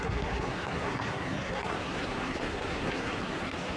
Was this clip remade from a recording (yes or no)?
yes